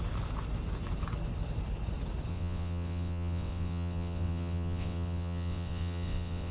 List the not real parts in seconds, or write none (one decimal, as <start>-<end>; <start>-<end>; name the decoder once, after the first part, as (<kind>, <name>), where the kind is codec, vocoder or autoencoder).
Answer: 2.3-6.5 (vocoder, WaveNeXt)